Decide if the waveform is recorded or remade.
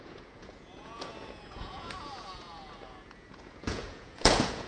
remade